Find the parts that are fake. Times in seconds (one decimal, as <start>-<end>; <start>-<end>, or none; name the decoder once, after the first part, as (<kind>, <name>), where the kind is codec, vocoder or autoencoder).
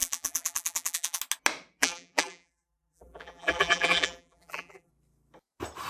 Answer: 0.0-1.2 (vocoder, BigVGAN v2); 1.8-4.9